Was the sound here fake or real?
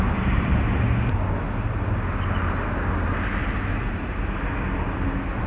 real